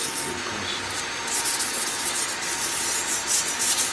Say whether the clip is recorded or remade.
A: recorded